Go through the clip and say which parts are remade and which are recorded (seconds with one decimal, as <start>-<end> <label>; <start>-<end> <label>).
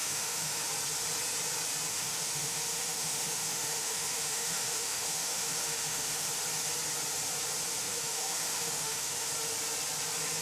0.0-0.7 remade; 0.7-1.9 recorded; 1.9-6.3 remade; 6.3-7.8 recorded; 7.8-9.3 remade; 9.3-10.4 recorded